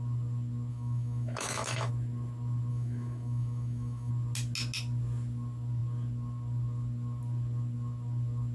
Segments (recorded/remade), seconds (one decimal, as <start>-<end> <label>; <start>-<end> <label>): 0.0-0.7 recorded; 0.7-1.9 remade; 1.9-2.7 recorded; 2.7-4.1 remade; 4.1-8.5 recorded